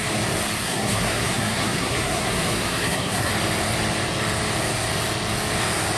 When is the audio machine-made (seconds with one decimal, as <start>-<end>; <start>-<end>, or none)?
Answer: 0.6-3.3